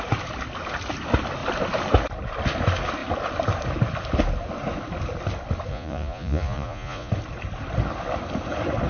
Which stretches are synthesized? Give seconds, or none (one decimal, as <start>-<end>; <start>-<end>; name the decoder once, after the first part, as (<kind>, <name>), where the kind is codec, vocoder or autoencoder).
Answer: 5.7-7.1 (vocoder, Vocos)